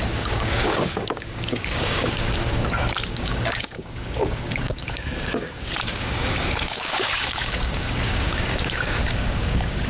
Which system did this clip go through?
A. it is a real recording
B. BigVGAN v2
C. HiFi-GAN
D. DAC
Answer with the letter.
D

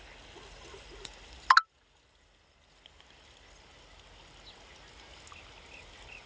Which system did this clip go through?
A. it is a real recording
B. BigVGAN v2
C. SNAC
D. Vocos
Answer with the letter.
A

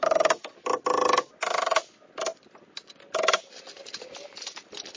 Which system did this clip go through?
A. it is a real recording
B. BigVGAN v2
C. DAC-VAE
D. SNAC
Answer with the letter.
A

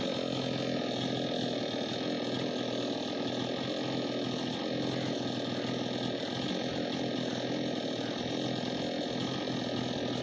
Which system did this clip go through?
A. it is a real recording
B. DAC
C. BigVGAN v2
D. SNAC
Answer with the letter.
A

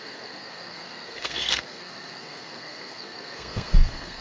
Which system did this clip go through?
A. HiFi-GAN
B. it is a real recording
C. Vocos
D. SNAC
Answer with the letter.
D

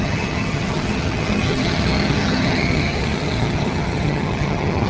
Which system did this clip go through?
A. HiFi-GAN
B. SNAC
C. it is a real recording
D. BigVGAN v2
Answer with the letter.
A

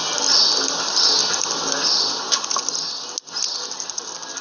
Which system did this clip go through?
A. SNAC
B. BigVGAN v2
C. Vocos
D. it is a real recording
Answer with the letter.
D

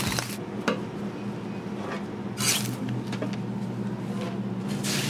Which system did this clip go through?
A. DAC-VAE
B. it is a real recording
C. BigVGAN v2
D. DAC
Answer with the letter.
B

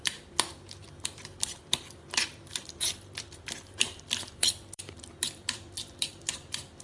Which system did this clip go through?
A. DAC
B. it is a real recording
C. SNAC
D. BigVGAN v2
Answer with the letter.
D